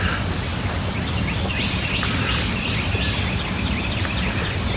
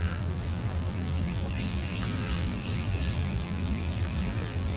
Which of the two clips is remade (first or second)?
second